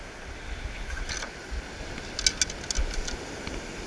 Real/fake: real